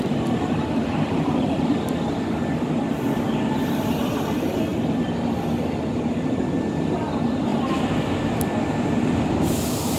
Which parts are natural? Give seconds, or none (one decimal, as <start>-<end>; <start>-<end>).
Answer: 4.7-5.9; 7.5-8.8